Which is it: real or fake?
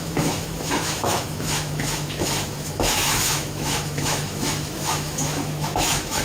fake